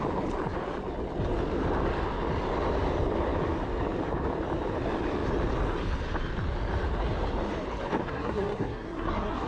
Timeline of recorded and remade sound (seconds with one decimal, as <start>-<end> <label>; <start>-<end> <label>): 0.0-8.0 recorded; 8.0-9.5 remade